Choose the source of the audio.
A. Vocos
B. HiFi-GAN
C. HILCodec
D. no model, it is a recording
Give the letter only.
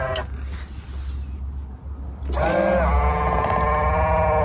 D